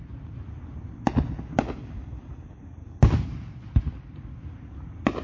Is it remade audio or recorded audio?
recorded